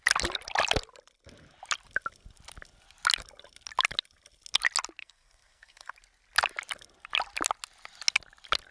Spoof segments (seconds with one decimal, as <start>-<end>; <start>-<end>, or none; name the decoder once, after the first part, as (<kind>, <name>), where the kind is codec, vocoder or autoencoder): 5.0-5.9 (codec, SNAC)